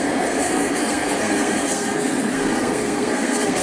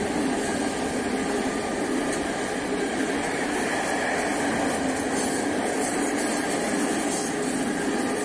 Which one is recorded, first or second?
second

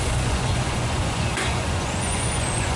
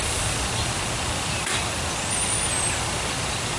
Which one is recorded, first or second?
second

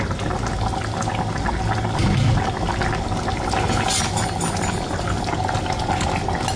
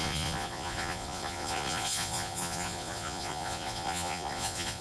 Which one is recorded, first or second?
first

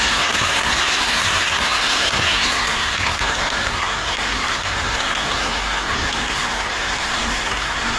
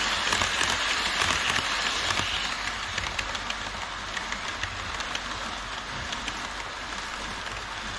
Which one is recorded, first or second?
second